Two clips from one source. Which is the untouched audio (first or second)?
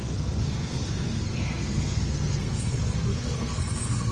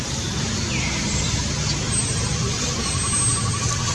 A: second